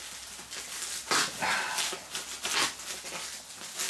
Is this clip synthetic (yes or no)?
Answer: no